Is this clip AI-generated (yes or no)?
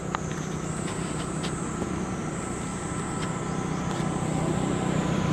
no